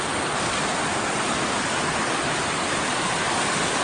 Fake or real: real